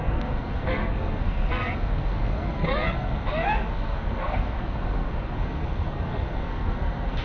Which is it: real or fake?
fake